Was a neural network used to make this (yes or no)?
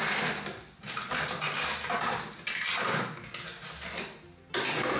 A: no